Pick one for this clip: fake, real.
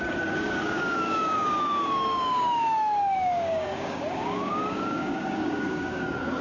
fake